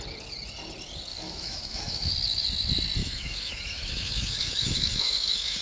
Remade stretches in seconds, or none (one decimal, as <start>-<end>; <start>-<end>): 1.1-2.1; 3.0-5.6